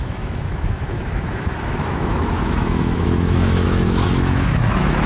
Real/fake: fake